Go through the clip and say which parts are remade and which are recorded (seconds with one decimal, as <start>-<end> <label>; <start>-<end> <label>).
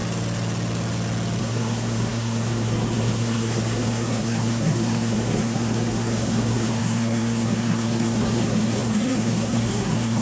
0.0-1.4 recorded; 1.4-10.2 remade